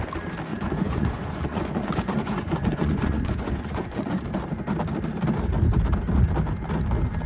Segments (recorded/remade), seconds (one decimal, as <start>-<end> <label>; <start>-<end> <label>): 0.0-0.5 recorded; 0.5-4.2 remade; 4.2-7.3 recorded

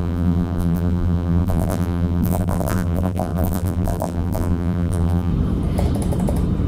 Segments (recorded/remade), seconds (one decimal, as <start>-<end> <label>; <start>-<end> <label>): 0.0-5.3 remade; 5.3-6.7 recorded

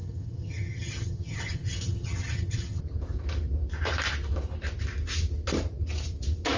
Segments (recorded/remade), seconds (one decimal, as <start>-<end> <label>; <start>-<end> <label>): 0.0-2.8 remade; 2.8-6.6 recorded

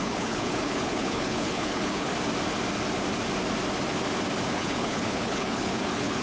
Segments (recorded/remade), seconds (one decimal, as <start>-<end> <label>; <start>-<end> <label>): 0.0-2.1 remade; 2.1-4.5 recorded; 4.5-6.2 remade

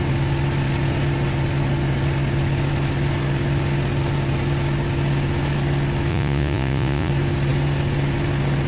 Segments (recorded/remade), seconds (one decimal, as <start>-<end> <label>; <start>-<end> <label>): 0.0-6.1 recorded; 6.1-7.1 remade; 7.1-8.7 recorded

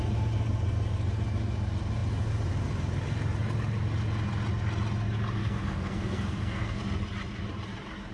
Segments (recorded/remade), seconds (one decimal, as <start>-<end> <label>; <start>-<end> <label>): 0.0-5.4 recorded; 5.4-6.8 remade; 6.8-8.1 recorded